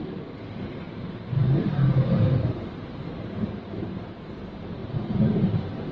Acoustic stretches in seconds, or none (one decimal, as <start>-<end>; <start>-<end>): none